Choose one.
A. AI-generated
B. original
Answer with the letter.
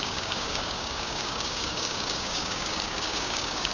A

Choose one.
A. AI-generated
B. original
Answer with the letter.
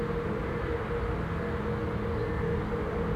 B